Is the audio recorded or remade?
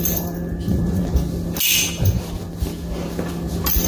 recorded